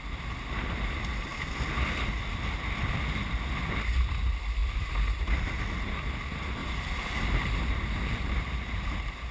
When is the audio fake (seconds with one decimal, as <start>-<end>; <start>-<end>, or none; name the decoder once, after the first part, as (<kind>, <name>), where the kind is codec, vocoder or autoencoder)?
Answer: 6.6-7.5 (vocoder, BigVGAN v2)